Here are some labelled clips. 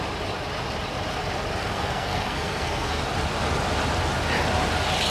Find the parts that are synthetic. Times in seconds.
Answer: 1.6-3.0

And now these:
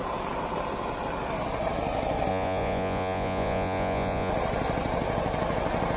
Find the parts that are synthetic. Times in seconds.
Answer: 2.3-4.3

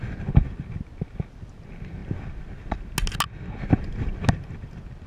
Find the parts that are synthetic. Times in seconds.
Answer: none

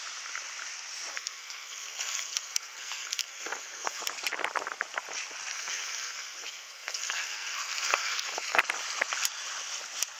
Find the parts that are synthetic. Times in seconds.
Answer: 1.1-4.0; 5.5-8.6

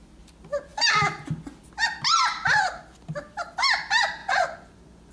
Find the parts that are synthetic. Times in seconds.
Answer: 4.2-5.1

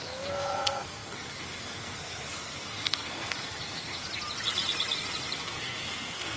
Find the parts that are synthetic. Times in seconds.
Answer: 0.0-4.0; 5.4-6.4

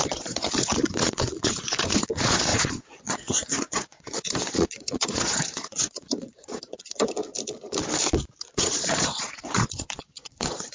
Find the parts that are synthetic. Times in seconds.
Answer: 0.0-7.2; 8.4-10.7